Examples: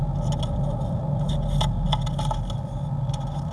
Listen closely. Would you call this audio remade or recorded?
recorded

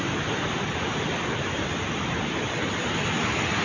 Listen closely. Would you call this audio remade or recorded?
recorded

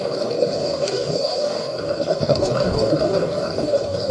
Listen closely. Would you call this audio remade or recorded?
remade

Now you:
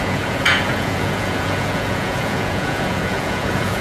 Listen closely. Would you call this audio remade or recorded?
remade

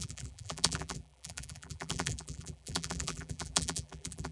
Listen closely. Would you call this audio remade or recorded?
remade